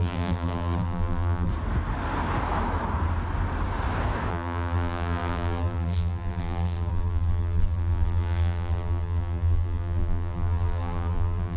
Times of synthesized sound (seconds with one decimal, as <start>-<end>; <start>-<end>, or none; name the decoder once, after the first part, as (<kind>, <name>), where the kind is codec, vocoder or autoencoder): 0.0-1.5 (vocoder, BigVGAN v2); 4.3-11.6